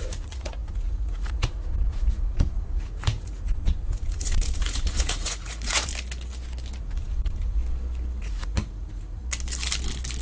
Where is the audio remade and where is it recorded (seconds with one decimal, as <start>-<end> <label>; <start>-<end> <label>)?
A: 0.0-5.9 remade; 5.9-6.8 recorded; 6.8-7.6 remade; 7.6-8.2 recorded; 8.2-9.2 remade; 9.2-10.2 recorded